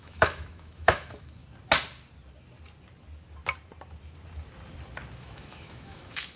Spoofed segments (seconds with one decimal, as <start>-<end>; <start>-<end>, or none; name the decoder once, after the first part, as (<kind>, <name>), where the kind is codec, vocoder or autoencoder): 0.0-1.4 (autoencoder, DAC-VAE); 5.2-6.4